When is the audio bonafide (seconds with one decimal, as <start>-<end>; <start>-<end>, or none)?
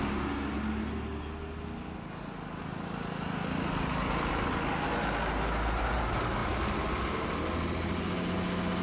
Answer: 0.0-8.8